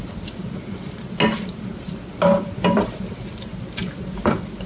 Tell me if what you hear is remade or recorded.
recorded